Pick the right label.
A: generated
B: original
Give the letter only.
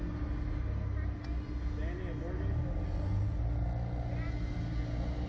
B